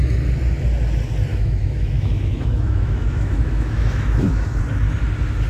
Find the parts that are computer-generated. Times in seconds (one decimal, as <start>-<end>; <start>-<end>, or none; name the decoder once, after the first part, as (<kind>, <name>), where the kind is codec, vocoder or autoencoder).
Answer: 1.3-4.6 (autoencoder, DAC-VAE)